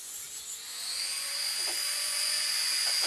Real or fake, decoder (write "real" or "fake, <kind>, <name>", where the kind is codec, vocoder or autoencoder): fake, vocoder, Vocos